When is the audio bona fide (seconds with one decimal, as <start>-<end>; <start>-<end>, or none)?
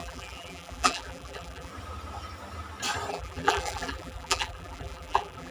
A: 1.7-3.1